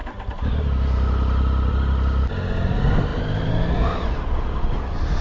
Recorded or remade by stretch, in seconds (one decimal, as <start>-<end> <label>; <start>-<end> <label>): 0.0-5.2 recorded